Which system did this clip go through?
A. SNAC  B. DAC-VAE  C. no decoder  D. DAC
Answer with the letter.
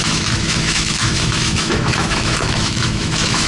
B